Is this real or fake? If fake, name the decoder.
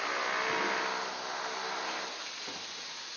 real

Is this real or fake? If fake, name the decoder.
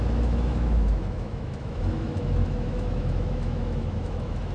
fake, autoencoder, DAC-VAE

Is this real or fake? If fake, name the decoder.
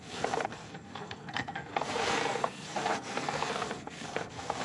fake, codec, SNAC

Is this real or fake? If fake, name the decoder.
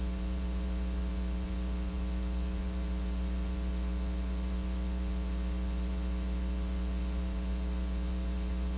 fake, vocoder, Vocos